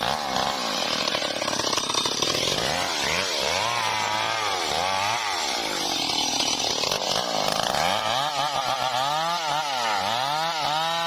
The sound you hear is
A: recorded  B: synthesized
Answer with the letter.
A